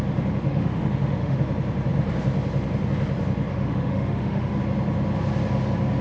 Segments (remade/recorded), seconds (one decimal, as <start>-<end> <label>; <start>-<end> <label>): 0.0-0.5 recorded; 0.5-1.4 remade; 1.4-3.5 recorded; 3.5-4.6 remade; 4.6-6.0 recorded